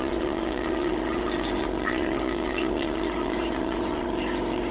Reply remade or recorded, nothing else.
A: remade